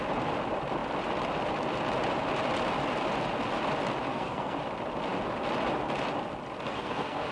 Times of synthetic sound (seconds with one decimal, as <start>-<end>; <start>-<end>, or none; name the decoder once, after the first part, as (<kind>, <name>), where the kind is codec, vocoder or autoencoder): 4.1-4.6 (codec, SNAC); 6.7-7.3